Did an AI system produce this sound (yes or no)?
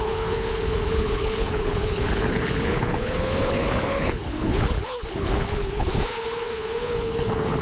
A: yes